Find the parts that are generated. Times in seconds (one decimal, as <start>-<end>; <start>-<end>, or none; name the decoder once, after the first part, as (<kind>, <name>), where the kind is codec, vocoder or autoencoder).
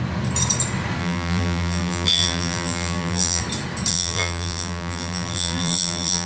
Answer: 1.0-3.4 (vocoder, BigVGAN v2); 3.9-6.3